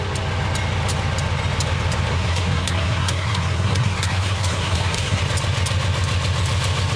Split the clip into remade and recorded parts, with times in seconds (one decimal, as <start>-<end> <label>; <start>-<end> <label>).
0.0-2.1 recorded; 2.1-5.2 remade; 5.2-7.0 recorded